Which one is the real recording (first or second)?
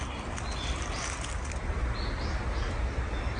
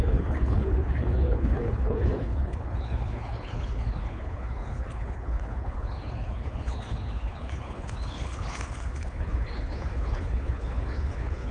first